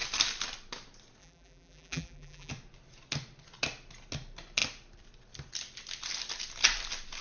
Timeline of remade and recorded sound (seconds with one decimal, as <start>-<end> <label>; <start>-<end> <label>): 0.0-1.2 recorded; 1.2-2.5 remade; 2.5-7.2 recorded